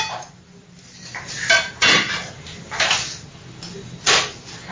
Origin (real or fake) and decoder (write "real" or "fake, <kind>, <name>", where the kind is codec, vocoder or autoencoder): real